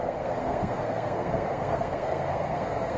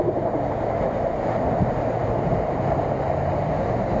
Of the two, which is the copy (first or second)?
first